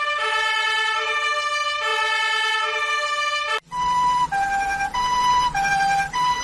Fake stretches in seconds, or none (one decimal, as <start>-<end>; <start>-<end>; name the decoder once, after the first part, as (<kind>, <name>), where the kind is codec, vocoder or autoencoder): 0.0-1.9 (vocoder, BigVGAN v2); 5.7-6.4